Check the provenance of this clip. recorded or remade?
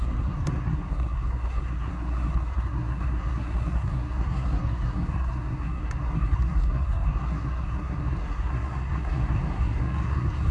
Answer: remade